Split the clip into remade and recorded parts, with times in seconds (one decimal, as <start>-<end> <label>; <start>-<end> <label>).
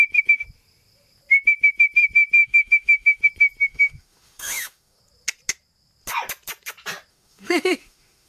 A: 0.0-2.4 recorded; 2.4-3.2 remade; 3.2-3.7 recorded; 3.7-5.0 remade; 5.0-7.1 recorded; 7.1-8.3 remade